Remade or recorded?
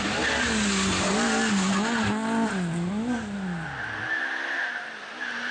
recorded